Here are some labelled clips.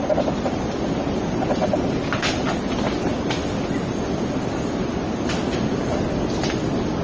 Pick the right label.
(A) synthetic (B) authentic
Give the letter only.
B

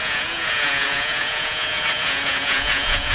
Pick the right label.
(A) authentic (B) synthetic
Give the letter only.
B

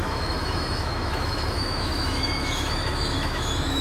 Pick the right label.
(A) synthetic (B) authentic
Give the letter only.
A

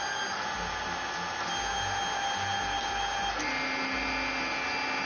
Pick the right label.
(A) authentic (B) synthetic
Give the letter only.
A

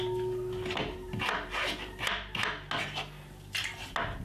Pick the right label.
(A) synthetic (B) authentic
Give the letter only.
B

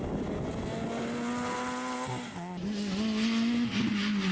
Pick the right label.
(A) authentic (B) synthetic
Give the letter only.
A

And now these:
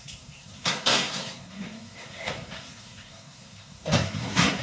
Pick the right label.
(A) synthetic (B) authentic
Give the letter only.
A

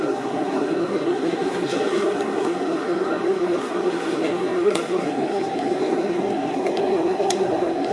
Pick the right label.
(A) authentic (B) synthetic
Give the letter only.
B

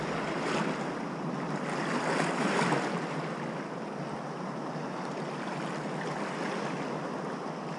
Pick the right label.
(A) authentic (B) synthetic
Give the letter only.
A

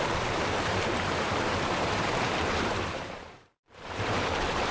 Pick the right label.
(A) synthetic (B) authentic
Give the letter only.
A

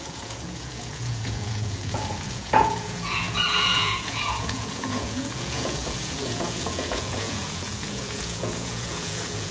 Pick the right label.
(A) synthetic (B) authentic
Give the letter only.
A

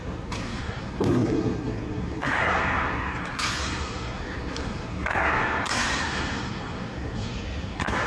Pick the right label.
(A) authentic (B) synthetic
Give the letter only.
B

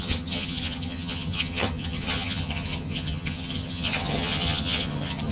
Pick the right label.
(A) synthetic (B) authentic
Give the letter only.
A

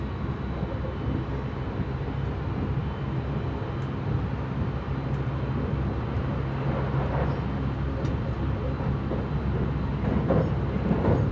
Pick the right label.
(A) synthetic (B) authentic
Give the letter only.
B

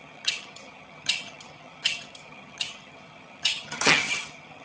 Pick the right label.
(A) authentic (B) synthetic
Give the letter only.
B